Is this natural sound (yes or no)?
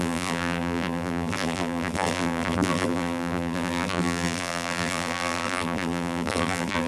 no